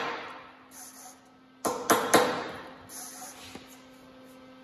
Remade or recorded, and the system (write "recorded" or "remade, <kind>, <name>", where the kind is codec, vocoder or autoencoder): recorded